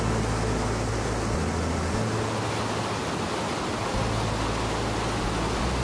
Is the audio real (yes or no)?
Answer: yes